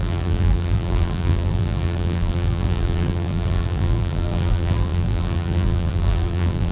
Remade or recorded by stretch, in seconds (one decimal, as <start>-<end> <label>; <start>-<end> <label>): 0.0-6.7 remade